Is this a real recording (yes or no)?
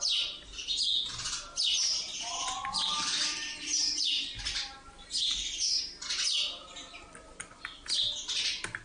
yes